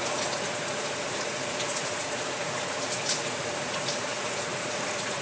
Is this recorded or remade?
remade